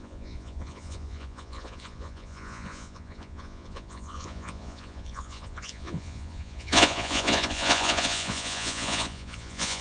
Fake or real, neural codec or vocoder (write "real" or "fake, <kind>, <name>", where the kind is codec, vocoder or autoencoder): fake, vocoder, Vocos